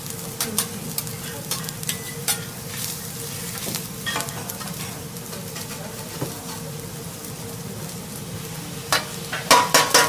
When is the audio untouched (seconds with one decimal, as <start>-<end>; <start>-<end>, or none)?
0.0-2.2; 6.3-10.1